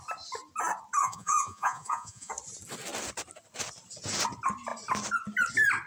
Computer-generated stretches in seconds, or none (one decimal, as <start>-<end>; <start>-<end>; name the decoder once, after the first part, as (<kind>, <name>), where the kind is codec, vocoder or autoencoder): 1.0-2.3 (vocoder, Vocos)